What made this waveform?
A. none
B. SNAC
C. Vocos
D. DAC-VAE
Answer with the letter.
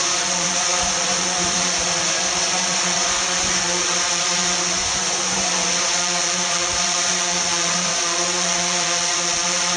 C